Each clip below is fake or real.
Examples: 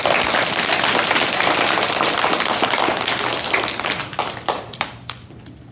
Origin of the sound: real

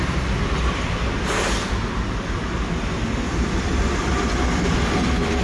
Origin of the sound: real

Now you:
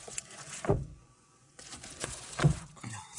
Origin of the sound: fake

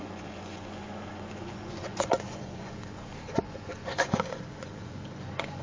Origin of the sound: fake